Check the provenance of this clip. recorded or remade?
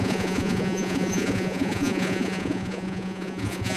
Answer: remade